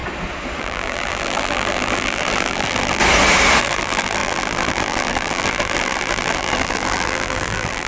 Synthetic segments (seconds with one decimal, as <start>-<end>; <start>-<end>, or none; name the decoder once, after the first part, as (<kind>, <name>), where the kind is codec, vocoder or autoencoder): 0.6-3.0 (vocoder, BigVGAN v2); 3.6-7.9